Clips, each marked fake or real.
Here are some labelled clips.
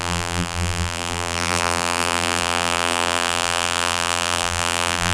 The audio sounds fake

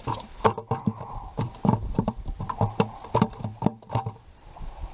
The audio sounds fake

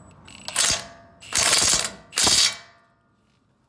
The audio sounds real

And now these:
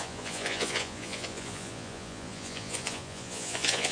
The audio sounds fake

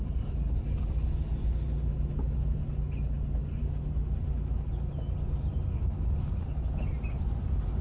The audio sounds real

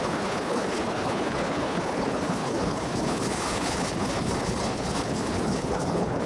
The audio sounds fake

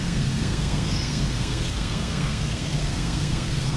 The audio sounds fake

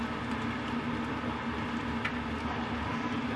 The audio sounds real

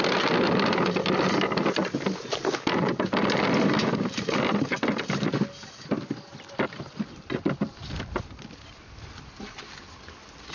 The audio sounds real